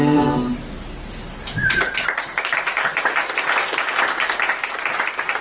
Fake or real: real